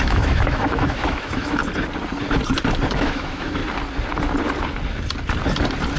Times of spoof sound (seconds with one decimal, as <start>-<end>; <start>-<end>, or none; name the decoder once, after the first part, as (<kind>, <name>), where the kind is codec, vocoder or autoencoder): 0.0-1.6 (autoencoder, DAC-VAE); 2.9-3.6